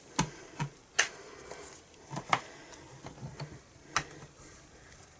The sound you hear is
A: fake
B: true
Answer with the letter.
B